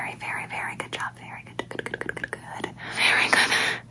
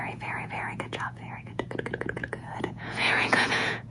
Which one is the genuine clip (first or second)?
first